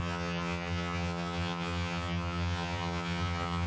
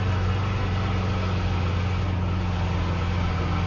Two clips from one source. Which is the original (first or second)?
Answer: second